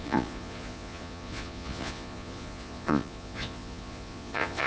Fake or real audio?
fake